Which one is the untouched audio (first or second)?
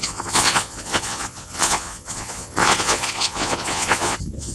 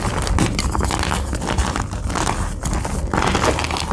second